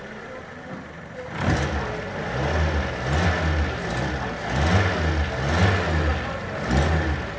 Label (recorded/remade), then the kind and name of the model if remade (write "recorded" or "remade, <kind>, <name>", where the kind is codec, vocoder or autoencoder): recorded